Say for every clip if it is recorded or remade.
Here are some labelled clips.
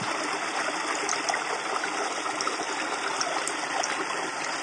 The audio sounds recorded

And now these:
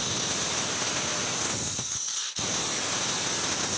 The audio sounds recorded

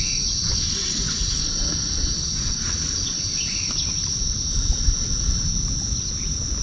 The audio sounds recorded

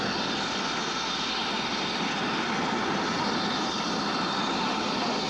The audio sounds recorded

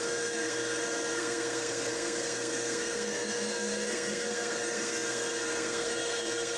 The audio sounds remade